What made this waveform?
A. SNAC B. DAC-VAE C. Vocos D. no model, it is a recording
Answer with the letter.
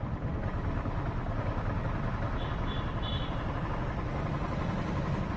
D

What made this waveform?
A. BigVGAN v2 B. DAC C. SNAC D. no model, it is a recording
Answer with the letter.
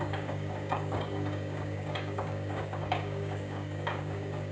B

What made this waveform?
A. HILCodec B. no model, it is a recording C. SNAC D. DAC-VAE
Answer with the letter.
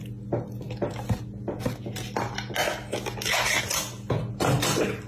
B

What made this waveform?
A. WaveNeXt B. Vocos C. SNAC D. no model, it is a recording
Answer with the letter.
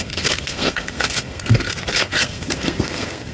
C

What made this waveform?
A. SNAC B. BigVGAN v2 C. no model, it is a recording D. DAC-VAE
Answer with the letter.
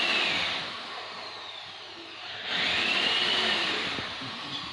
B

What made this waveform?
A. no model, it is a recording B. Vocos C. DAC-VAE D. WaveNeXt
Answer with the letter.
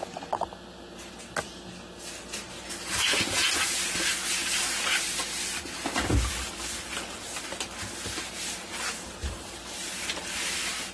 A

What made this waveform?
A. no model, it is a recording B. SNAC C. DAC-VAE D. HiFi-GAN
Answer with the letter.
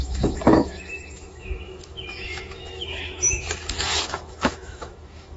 C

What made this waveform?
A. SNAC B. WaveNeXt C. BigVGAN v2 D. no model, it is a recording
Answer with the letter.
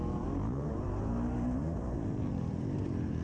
C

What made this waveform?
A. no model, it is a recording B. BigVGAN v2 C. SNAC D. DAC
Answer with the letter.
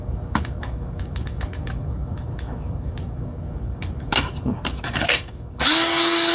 D